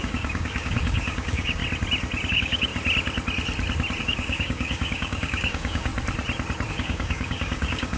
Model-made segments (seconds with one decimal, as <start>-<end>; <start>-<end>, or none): 0.0-1.6; 2.3-2.7; 4.0-5.9; 6.7-8.0